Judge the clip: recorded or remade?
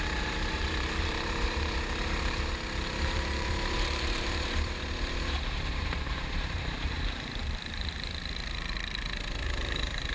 remade